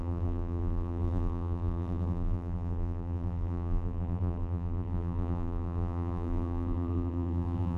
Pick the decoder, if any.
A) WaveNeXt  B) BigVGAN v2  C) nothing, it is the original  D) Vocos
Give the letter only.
B